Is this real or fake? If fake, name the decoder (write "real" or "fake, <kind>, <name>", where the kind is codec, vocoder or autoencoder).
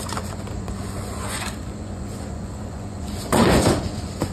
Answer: fake, vocoder, Vocos